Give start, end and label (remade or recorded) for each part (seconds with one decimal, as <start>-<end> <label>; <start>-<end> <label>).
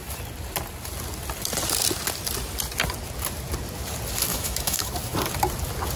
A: 0.0-4.3 recorded; 4.3-4.9 remade; 4.9-6.0 recorded